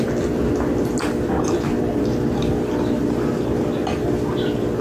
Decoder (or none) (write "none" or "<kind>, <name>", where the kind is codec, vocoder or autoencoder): none